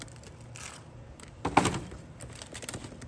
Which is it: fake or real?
real